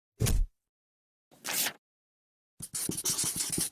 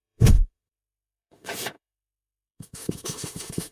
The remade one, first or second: second